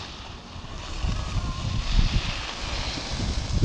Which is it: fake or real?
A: real